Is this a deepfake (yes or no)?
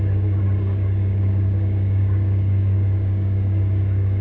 yes